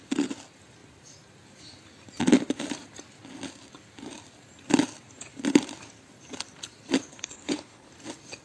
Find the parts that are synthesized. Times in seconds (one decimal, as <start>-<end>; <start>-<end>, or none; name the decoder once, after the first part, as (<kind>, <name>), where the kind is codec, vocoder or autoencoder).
7.1-7.9 (codec, HILCodec)